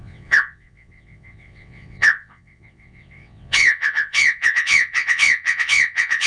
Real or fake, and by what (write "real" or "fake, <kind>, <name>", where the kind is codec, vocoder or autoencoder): fake, vocoder, WaveNeXt